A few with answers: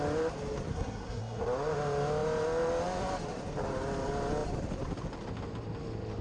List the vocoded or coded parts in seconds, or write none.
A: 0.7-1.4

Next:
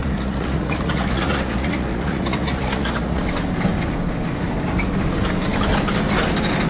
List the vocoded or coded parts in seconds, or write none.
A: 0.0-3.2

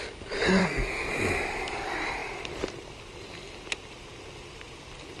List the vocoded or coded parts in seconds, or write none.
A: 0.6-1.1

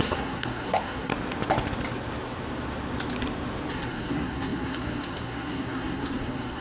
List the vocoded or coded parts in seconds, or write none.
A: 0.0-1.1; 3.7-6.6

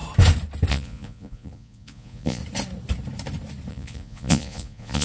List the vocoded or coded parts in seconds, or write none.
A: 0.7-2.4; 3.7-5.0